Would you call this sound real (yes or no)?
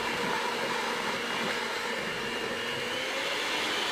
yes